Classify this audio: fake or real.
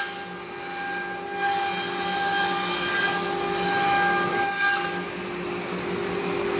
real